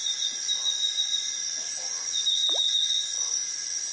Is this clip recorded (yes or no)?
yes